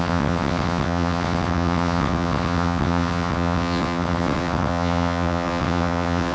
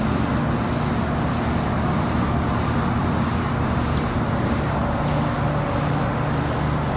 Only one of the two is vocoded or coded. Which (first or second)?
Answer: first